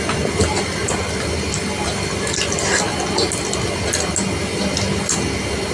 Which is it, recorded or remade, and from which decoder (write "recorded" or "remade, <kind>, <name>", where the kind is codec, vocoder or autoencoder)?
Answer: recorded